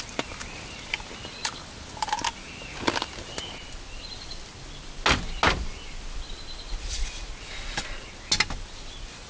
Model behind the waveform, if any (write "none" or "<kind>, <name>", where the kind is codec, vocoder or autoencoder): none